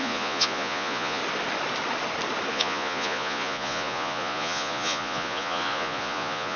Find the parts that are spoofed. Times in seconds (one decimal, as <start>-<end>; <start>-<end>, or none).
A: 0.0-1.2; 2.5-6.6